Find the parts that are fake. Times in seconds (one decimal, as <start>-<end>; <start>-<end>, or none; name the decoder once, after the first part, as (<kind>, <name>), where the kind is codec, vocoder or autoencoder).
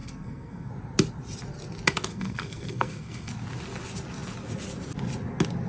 0.0-0.7 (codec, SNAC); 2.1-3.3